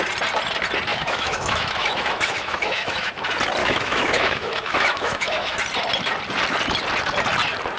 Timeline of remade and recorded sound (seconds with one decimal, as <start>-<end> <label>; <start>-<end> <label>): 0.0-0.9 recorded; 0.9-3.1 remade; 3.1-3.6 recorded; 3.6-5.6 remade; 5.6-7.8 recorded